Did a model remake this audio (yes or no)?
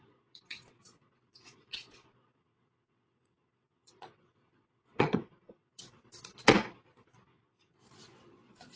yes